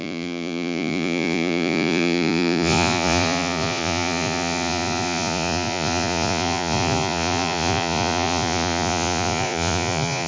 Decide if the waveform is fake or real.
fake